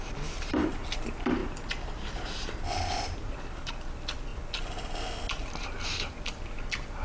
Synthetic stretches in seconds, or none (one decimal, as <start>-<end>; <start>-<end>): 0.0-0.7; 1.4-3.7